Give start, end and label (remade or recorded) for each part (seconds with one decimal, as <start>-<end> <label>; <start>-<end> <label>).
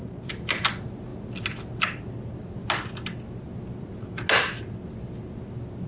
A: 0.0-5.9 recorded